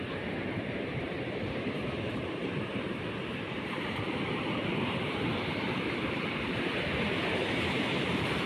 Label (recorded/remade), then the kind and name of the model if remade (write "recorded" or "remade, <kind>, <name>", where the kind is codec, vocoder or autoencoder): remade, vocoder, BigVGAN v2